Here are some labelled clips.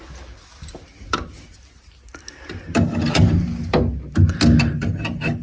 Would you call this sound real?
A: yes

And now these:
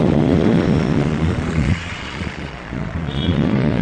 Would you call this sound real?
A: no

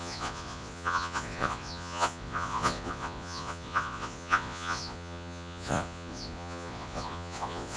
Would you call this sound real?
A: no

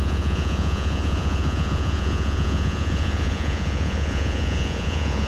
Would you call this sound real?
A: no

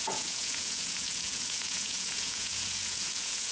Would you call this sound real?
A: no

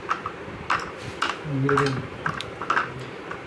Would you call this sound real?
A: yes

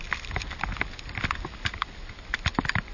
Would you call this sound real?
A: yes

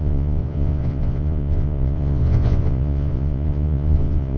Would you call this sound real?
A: no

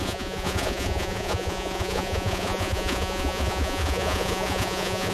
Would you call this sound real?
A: no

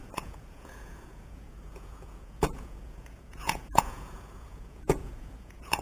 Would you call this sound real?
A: no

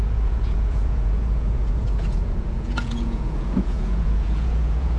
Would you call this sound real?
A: no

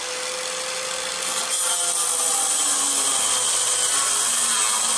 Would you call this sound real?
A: yes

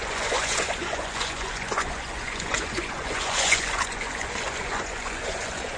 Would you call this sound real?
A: no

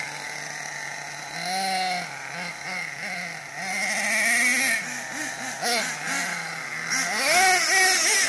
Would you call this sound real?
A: yes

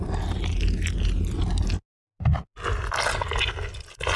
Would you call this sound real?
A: yes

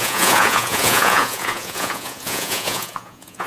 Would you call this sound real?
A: no